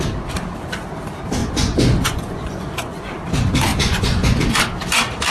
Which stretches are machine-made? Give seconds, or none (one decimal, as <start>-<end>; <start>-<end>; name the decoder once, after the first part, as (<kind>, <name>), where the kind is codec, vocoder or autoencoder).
1.4-3.1 (vocoder, Vocos); 3.7-4.4

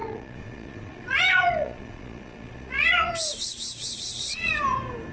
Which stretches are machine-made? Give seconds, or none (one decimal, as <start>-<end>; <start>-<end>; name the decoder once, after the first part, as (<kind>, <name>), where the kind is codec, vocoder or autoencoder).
0.0-3.1 (vocoder, Vocos); 3.8-4.5